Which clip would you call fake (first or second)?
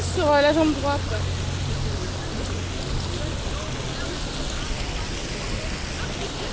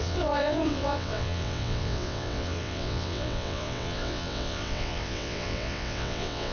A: second